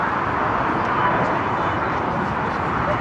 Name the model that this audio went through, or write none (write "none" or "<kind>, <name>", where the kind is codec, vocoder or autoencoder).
none